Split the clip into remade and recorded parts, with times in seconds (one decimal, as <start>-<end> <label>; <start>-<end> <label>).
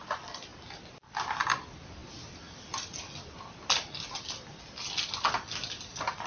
0.0-6.3 recorded